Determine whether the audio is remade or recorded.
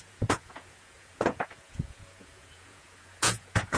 remade